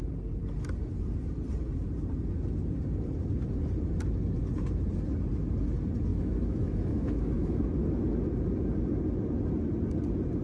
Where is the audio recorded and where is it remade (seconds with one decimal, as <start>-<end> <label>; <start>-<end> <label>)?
0.0-6.1 recorded; 6.1-7.6 remade; 7.6-10.4 recorded